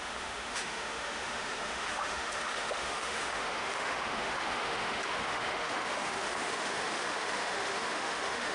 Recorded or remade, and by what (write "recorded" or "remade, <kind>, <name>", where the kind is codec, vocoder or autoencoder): remade, autoencoder, DAC-VAE